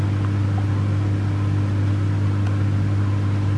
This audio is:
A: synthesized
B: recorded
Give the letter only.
B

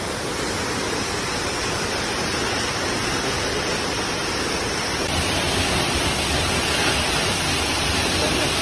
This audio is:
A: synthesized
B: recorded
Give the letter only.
B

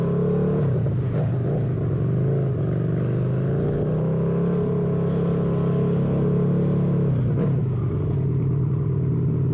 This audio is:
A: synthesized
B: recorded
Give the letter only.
B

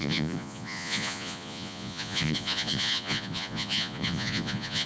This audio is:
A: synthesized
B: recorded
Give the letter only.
A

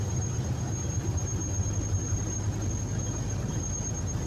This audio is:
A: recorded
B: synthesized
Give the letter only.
A